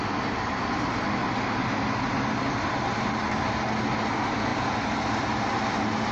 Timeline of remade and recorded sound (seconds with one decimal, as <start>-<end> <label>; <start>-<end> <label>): 0.0-6.1 recorded